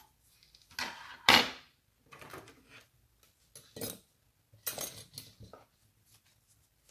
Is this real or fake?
real